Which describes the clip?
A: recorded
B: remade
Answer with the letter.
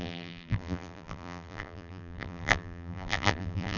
B